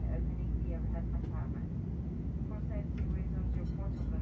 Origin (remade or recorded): recorded